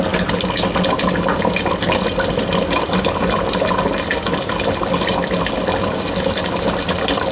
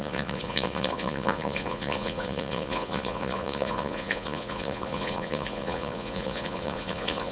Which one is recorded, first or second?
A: first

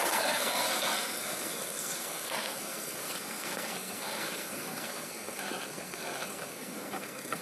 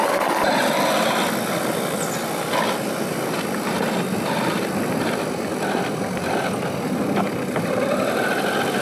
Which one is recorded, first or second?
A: second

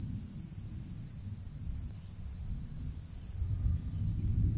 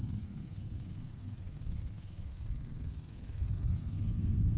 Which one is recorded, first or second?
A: first